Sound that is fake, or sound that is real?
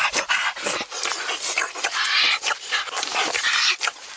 real